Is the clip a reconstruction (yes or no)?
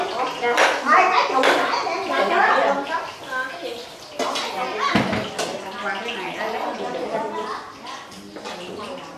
no